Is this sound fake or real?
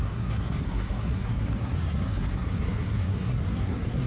fake